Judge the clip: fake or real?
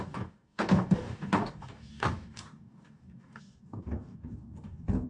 fake